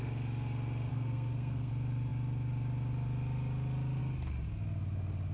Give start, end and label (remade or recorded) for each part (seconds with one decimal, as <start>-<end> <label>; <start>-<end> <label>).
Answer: 0.0-0.9 recorded; 0.9-1.7 remade; 1.7-5.3 recorded